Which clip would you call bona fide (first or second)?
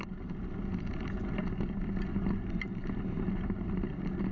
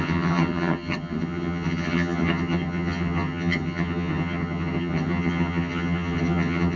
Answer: first